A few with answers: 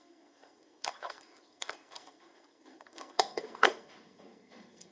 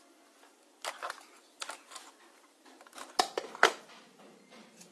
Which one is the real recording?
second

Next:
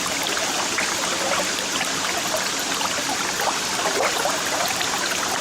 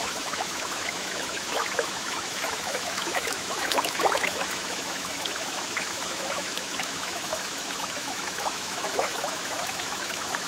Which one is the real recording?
first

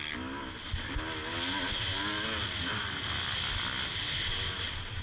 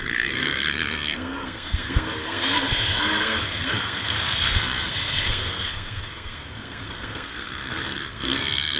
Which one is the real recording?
first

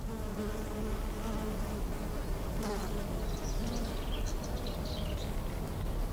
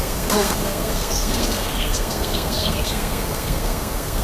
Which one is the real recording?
first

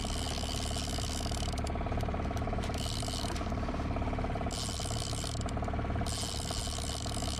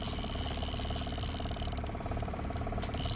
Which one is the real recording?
first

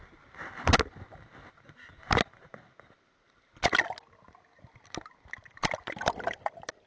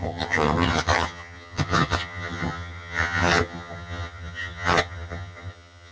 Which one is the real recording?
first